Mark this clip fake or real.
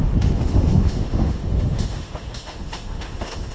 fake